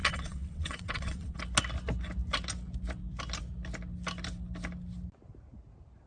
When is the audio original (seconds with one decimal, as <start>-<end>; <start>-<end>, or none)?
1.4-6.1